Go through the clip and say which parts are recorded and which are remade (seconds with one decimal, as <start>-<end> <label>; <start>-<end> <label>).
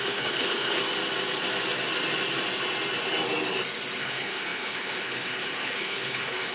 0.0-0.8 remade; 0.8-4.0 recorded; 4.0-6.5 remade